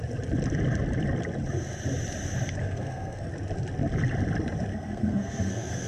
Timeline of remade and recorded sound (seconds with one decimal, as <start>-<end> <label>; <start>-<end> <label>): 0.0-2.6 recorded; 2.6-3.3 remade; 3.3-4.7 recorded; 4.7-5.9 remade